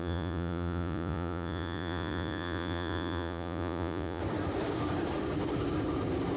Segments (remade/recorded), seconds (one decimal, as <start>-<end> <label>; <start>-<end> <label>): 0.0-4.2 remade; 4.2-6.4 recorded